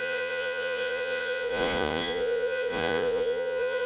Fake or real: fake